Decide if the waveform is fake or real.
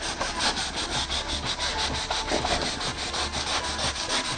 real